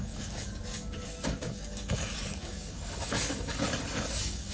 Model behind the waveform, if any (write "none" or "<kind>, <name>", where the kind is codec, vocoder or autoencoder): codec, DAC